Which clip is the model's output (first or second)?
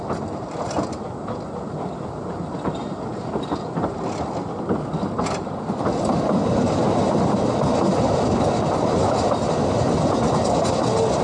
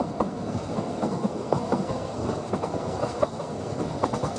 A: second